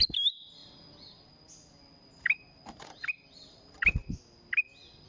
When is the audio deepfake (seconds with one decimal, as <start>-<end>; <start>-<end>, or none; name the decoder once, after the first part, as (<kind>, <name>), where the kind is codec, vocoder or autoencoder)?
none